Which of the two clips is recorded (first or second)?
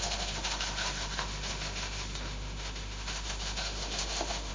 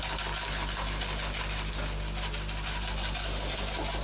second